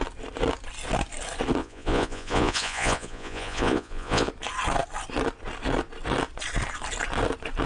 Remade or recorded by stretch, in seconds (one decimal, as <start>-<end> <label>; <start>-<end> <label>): 0.0-1.6 recorded; 1.6-4.3 remade; 4.3-7.7 recorded